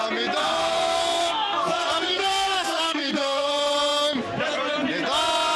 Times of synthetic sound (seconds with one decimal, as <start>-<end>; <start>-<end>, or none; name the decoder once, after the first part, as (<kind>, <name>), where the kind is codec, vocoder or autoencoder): 0.4-3.5 (codec, SNAC)